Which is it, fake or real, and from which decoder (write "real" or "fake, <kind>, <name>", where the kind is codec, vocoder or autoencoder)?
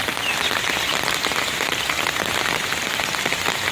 real